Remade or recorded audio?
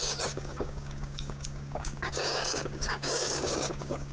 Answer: remade